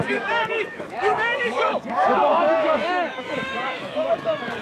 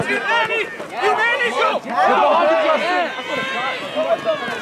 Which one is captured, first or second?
second